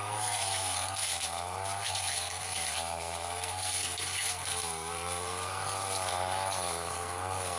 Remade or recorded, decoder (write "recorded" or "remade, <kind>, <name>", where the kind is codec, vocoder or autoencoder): remade, codec, SNAC